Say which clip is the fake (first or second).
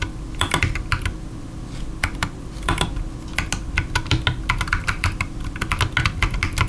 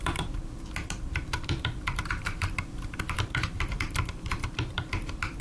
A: second